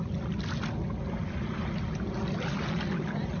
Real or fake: real